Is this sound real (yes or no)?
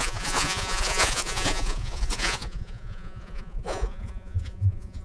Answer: no